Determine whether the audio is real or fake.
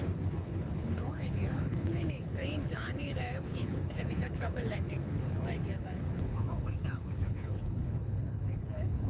fake